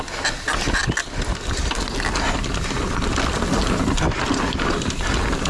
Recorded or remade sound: recorded